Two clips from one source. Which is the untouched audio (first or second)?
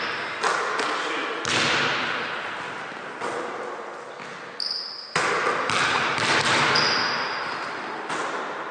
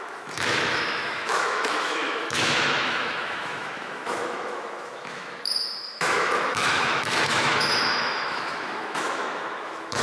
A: first